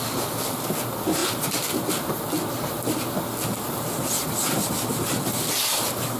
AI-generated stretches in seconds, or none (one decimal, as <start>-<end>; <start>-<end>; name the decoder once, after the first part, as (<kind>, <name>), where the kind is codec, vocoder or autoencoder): none